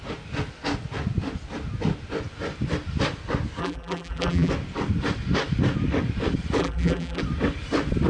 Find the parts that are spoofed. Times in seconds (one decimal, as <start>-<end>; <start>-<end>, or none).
3.6-4.5; 6.6-7.2